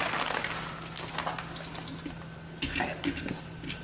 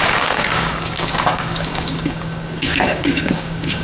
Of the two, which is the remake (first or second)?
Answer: second